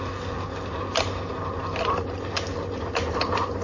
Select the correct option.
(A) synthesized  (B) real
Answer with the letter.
B